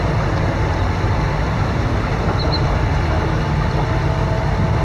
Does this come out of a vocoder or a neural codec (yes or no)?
no